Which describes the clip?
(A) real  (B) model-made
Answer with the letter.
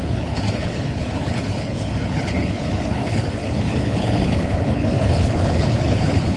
B